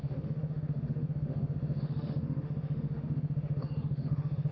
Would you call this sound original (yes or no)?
no